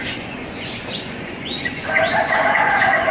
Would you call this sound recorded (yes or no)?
no